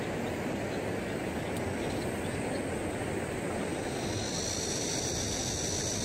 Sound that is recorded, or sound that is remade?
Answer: recorded